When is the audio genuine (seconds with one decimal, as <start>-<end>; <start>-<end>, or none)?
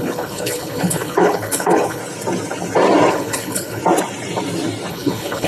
2.0-3.1; 3.8-4.9